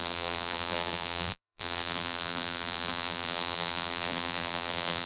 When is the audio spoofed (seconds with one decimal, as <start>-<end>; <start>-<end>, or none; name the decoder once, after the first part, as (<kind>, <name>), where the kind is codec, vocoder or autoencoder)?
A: 0.0-5.1 (vocoder, BigVGAN v2)